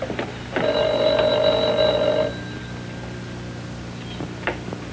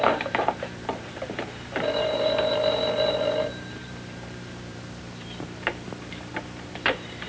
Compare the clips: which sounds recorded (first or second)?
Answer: first